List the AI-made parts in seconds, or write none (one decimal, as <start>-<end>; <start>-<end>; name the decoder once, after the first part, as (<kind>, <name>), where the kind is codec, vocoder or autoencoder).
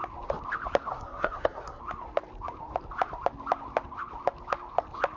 0.9-1.8 (codec, SNAC)